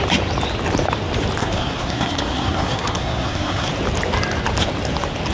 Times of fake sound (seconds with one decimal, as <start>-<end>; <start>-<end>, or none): 1.4-3.7